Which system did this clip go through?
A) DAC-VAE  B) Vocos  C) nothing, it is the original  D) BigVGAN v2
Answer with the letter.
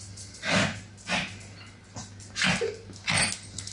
C